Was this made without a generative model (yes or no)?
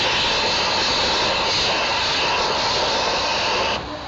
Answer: yes